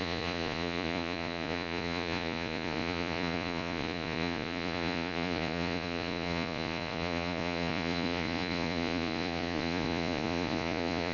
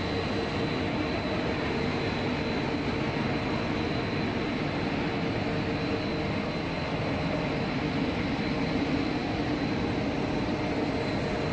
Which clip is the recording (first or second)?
second